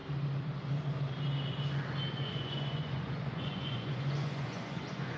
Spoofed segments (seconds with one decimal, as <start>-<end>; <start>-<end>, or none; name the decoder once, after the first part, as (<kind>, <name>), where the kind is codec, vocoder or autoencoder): 2.1-5.2 (vocoder, Vocos)